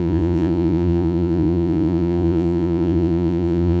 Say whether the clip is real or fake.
fake